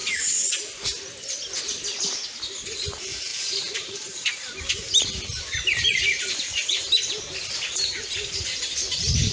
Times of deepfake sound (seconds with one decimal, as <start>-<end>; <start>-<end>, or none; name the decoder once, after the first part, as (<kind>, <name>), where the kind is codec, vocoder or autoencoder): 2.8-9.3 (vocoder, BigVGAN v2)